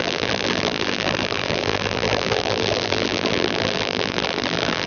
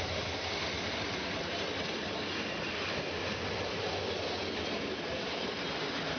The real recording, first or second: second